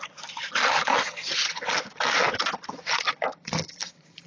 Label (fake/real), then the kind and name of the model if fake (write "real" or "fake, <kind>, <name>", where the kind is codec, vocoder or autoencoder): real